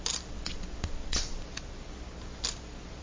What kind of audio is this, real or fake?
real